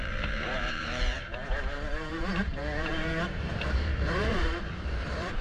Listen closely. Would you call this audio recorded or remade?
remade